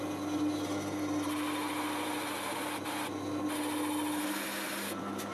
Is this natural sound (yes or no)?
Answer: yes